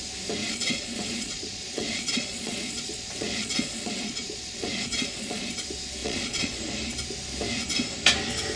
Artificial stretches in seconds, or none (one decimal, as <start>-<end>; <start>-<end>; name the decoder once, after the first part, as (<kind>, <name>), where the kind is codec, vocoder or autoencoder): 0.4-5.5 (vocoder, Vocos); 6.0-6.6